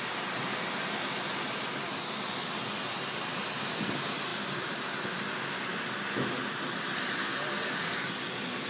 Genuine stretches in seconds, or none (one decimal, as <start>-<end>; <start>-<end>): 0.0-8.7